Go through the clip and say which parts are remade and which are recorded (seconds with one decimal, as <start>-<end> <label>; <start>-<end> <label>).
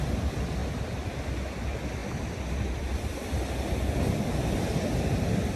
0.0-5.6 recorded